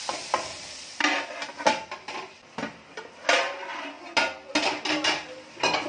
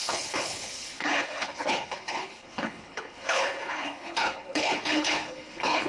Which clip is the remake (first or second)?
second